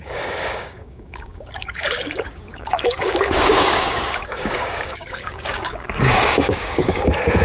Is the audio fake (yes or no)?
yes